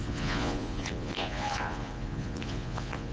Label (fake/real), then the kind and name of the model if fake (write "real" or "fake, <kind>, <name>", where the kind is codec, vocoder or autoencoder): fake, vocoder, Vocos